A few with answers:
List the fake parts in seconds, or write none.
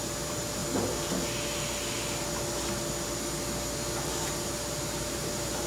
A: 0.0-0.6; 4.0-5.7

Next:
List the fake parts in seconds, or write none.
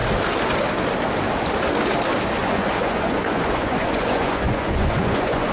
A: 2.4-5.5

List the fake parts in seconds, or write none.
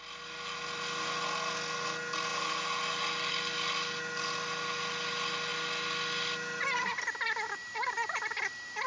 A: none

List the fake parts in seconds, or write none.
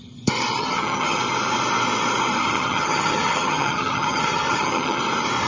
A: 0.6-1.2; 2.4-5.0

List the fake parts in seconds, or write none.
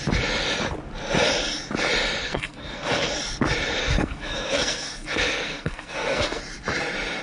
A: 2.2-3.1; 3.8-6.4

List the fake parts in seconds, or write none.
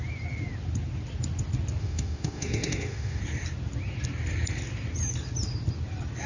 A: 1.8-3.2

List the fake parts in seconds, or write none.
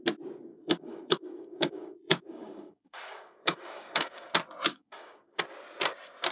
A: 0.5-4.3; 4.7-5.4